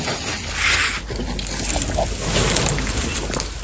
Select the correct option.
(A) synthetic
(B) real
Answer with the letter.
B